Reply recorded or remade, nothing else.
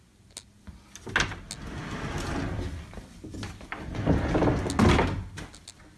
recorded